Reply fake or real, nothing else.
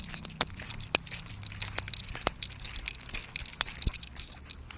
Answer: real